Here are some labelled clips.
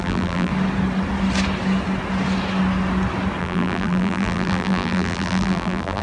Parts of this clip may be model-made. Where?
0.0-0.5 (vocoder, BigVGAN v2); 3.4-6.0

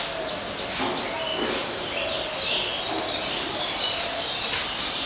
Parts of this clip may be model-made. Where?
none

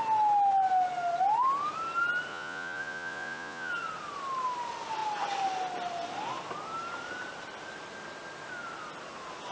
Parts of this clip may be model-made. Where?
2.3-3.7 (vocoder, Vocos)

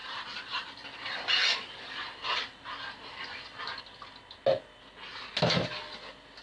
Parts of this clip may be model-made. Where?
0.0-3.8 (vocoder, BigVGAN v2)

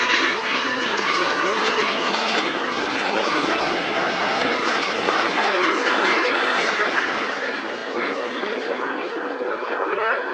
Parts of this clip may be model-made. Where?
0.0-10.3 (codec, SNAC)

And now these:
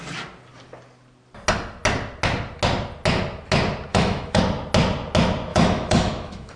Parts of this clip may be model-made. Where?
3.9-4.4 (autoencoder, DAC-VAE); 5.5-6.6

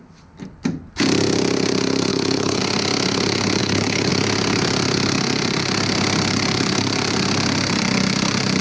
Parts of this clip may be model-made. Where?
2.1-2.6 (codec, HILCodec); 3.6-4.1